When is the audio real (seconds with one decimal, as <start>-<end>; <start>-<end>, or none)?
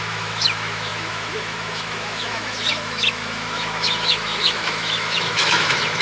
none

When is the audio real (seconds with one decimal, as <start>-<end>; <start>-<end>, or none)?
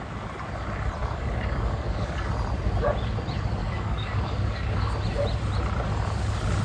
0.0-1.0; 2.3-3.6; 4.9-6.6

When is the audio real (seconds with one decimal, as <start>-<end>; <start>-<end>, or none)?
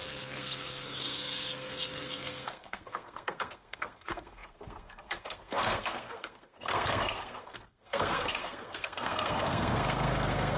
none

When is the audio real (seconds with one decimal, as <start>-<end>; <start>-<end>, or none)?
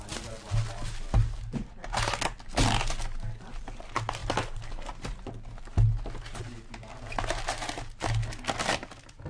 0.0-9.3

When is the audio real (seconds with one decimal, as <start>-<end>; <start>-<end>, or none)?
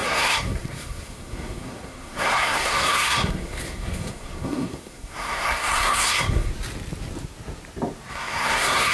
6.5-8.1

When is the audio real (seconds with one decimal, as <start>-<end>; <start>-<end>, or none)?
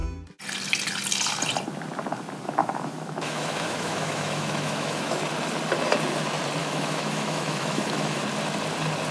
0.0-2.6; 5.2-6.6; 8.2-9.1